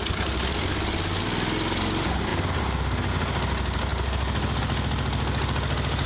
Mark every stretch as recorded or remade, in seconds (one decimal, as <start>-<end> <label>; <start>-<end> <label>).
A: 0.0-6.1 recorded